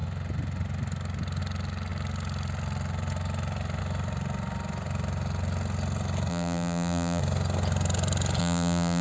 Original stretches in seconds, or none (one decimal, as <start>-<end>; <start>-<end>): 0.0-6.3; 7.2-8.4